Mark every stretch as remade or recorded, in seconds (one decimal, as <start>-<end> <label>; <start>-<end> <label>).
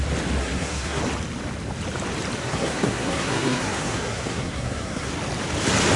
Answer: 0.0-0.4 recorded; 0.4-1.0 remade; 1.0-2.4 recorded; 2.4-5.1 remade; 5.1-6.0 recorded